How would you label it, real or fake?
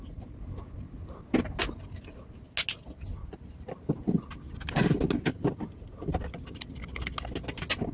real